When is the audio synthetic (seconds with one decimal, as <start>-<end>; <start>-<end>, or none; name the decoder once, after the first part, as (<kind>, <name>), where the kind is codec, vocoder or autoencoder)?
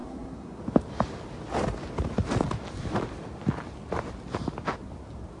0.0-0.6 (codec, SNAC)